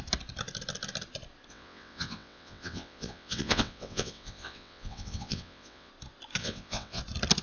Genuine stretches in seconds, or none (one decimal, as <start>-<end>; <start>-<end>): 0.0-1.5; 5.9-6.4; 7.0-7.4